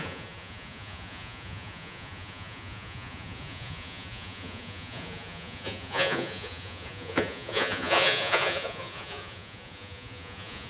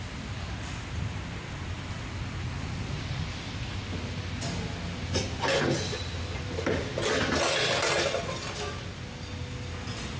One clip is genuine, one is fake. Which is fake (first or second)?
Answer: first